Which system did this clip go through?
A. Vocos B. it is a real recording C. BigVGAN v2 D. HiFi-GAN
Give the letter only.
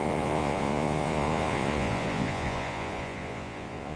A